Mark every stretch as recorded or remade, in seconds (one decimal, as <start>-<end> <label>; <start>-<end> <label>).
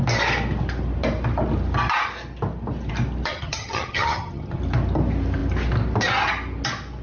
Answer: 0.0-3.3 recorded; 3.3-4.6 remade; 4.6-7.0 recorded